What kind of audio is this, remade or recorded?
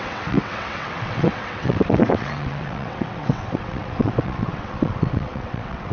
remade